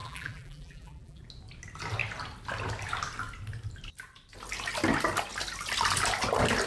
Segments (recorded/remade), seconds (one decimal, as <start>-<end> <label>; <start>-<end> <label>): 0.0-1.2 remade; 1.2-6.7 recorded